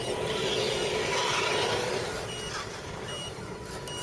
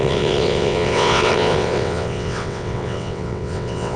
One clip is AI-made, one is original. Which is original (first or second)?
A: first